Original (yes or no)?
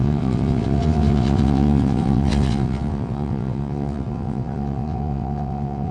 no